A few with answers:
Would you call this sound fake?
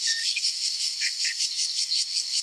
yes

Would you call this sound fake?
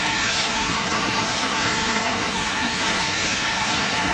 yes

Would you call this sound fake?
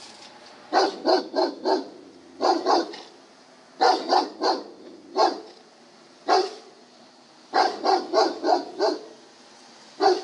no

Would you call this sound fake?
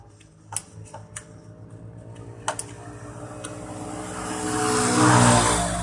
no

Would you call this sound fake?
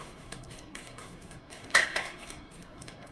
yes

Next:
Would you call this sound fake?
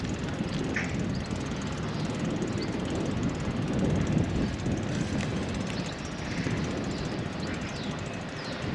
no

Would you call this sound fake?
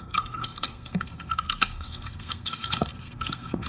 yes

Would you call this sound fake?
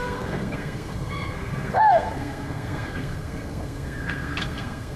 yes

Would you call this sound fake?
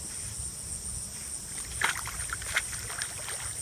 no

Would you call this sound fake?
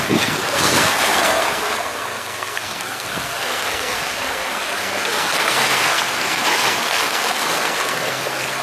yes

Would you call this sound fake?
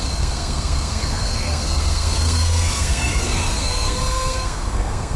yes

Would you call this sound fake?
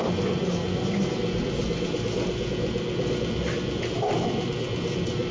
no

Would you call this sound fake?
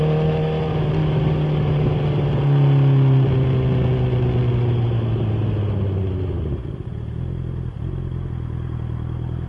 no